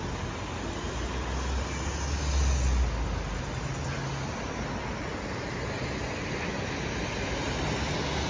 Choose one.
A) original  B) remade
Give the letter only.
A